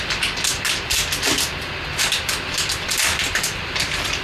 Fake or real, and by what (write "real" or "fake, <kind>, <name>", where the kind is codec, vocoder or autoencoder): real